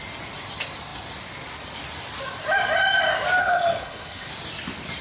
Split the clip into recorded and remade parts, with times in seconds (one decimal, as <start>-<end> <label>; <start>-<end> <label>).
0.0-3.4 recorded; 3.4-4.3 remade; 4.3-5.0 recorded